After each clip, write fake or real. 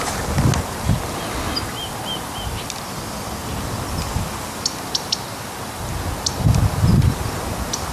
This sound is real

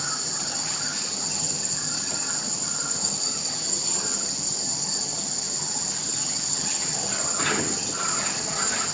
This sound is fake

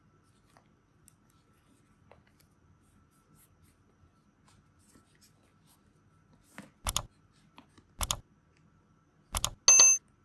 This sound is real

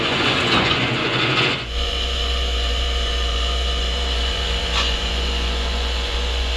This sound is fake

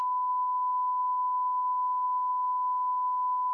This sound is real